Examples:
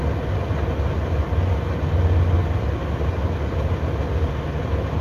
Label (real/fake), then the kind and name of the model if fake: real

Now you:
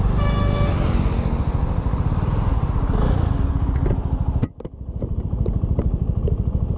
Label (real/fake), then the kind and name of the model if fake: real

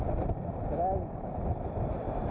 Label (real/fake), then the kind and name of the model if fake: real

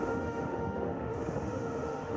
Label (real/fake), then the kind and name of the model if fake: fake, autoencoder, DAC-VAE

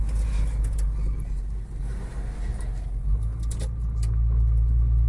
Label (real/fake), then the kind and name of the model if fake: real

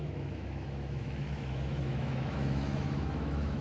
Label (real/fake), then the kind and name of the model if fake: fake, autoencoder, DAC-VAE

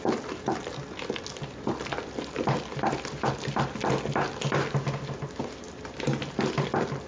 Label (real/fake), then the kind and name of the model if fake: real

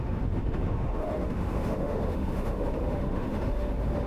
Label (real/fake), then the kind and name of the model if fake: fake, autoencoder, DAC-VAE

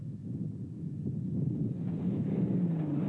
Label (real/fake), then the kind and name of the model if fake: real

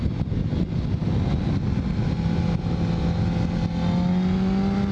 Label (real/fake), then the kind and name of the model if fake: real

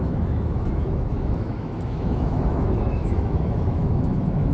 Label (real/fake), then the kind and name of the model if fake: fake, autoencoder, DAC-VAE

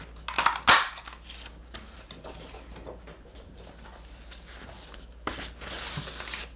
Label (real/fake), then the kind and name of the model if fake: real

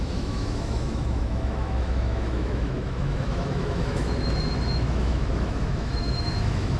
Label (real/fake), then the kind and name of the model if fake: fake, autoencoder, DAC-VAE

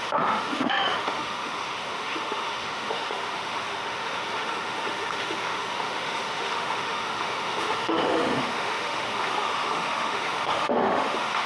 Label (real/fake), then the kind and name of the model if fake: fake, autoencoder, DAC-VAE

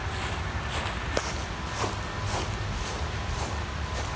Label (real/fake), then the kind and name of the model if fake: real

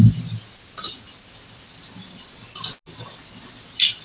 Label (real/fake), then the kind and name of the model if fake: real